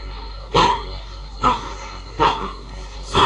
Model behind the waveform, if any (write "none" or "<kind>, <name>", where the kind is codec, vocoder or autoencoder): codec, SNAC